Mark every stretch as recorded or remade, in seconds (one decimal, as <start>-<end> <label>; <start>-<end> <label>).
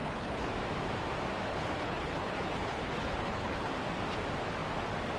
0.0-0.5 remade; 0.5-1.5 recorded; 1.5-3.7 remade; 3.7-5.2 recorded